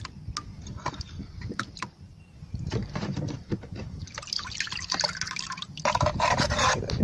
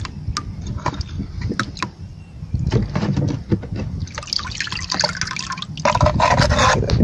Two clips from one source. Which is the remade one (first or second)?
first